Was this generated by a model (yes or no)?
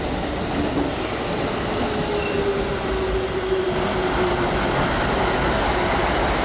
no